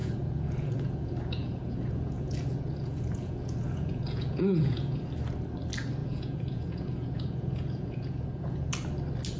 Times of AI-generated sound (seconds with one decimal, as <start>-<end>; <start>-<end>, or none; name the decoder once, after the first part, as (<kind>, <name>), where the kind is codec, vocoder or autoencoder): 0.0-5.0 (vocoder, Vocos); 6.0-8.7